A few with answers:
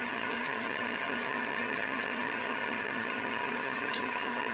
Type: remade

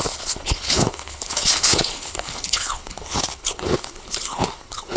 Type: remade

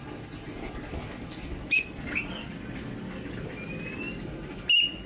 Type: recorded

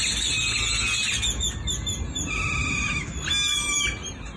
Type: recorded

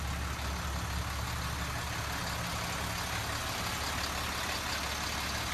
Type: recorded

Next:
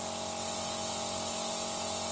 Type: recorded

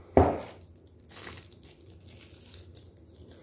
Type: recorded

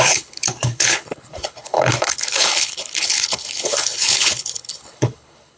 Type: remade